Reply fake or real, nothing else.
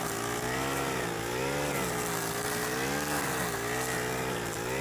real